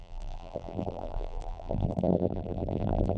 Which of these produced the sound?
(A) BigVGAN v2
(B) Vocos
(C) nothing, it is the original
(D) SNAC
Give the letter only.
A